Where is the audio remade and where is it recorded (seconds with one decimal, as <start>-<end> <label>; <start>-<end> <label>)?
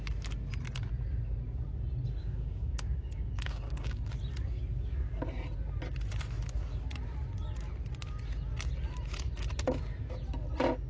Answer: 0.0-2.2 recorded; 2.2-4.1 remade; 4.1-10.9 recorded